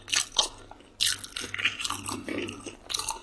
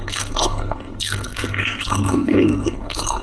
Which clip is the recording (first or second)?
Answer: first